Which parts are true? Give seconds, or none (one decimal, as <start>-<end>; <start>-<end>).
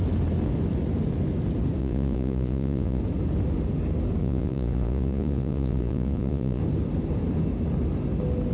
0.0-1.8; 3.0-4.2; 6.6-8.5